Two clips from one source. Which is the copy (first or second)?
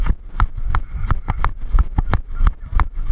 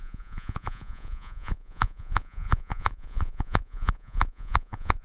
second